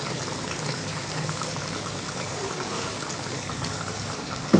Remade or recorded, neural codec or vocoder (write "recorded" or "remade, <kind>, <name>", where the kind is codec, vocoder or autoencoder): remade, codec, DAC